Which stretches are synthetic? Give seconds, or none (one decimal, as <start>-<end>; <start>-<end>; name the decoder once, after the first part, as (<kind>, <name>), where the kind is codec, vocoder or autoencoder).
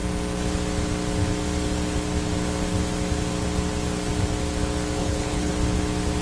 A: 5.0-5.5 (codec, HILCodec)